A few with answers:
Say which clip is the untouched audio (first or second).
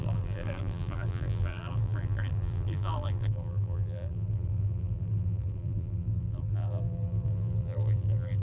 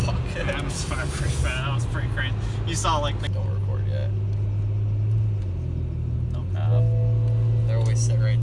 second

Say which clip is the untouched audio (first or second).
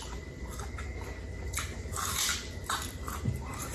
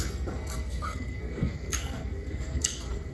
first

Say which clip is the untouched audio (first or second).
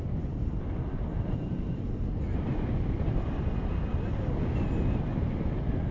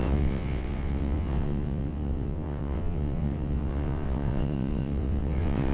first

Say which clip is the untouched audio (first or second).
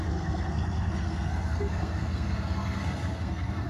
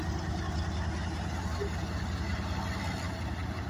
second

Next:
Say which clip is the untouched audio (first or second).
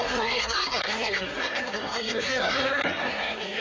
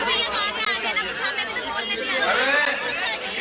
second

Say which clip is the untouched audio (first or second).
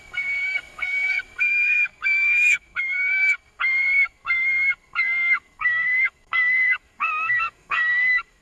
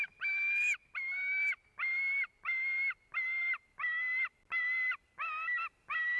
second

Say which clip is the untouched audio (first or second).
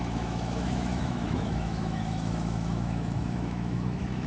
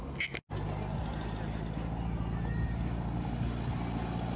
second